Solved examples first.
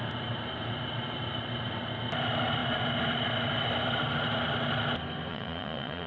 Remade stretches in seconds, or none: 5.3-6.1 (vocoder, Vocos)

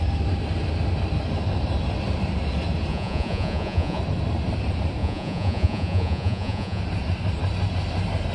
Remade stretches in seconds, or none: 2.9-4.0 (vocoder, Vocos); 5.0-6.8